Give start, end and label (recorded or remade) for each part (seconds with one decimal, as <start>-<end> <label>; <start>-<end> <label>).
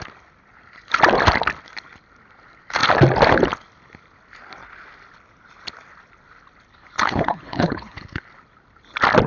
0.0-6.7 recorded; 6.7-8.2 remade; 8.2-9.3 recorded